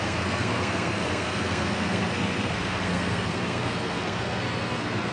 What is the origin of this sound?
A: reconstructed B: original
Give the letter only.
A